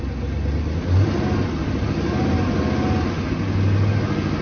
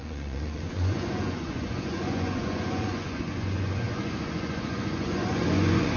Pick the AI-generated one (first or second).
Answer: second